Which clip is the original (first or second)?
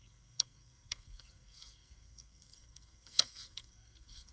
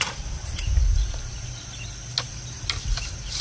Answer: second